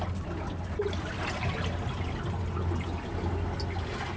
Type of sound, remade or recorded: recorded